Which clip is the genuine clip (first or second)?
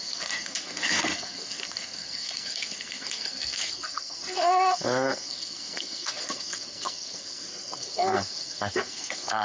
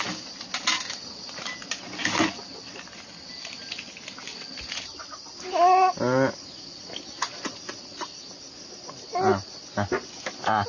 second